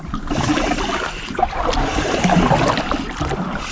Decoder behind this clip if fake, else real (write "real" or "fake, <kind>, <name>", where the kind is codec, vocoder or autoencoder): real